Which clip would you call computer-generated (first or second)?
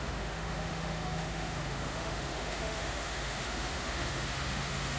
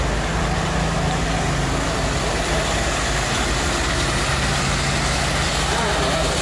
first